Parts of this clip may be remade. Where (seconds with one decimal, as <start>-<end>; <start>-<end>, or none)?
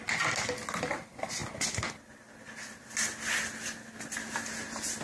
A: none